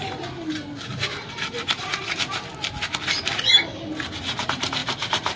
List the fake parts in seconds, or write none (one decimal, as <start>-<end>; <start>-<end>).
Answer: 0.0-1.9; 4.2-5.4